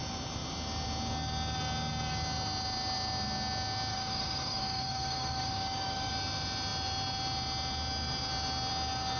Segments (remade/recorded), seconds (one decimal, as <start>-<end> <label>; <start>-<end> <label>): 0.0-3.9 recorded; 3.9-6.1 remade; 6.1-9.2 recorded